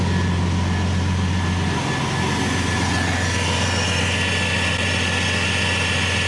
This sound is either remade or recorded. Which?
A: recorded